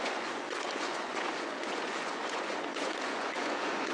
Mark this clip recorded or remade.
remade